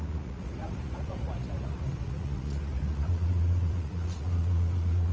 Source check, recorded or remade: remade